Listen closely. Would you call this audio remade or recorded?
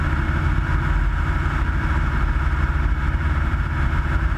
remade